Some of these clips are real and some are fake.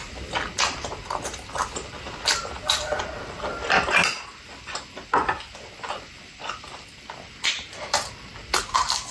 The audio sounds real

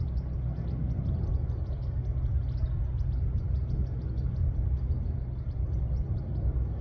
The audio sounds real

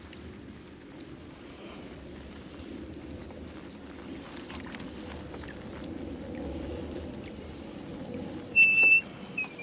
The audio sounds real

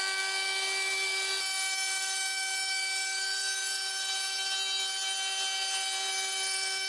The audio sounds real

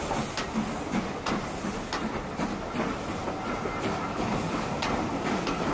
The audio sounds real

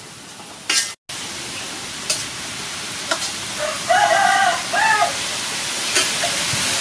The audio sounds real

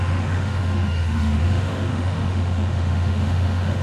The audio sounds fake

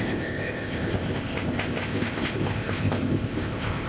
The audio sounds fake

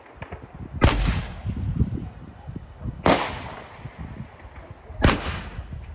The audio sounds real